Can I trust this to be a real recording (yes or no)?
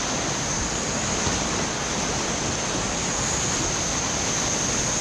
yes